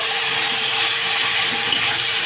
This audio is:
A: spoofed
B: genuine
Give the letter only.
A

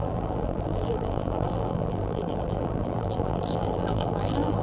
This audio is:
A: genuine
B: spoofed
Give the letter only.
B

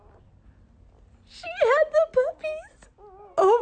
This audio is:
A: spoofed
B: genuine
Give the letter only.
B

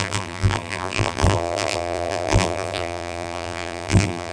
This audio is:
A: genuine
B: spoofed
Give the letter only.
B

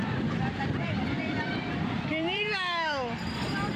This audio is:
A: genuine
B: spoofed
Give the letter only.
B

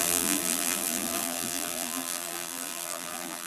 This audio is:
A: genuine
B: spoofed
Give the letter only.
B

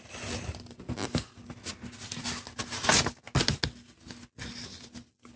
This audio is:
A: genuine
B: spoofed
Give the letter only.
A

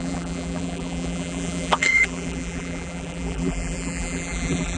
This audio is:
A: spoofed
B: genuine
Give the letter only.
A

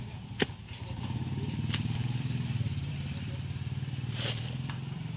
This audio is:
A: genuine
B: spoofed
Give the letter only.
B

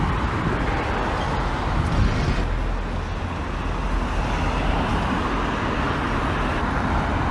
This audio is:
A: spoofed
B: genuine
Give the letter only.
B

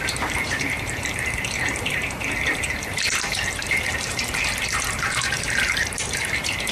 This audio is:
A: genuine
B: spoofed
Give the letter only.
B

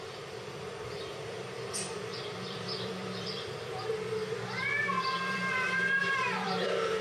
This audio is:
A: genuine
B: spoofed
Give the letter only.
B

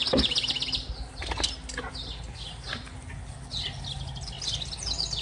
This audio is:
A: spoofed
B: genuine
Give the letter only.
B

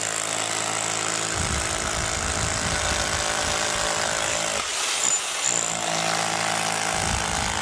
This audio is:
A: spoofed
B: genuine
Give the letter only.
B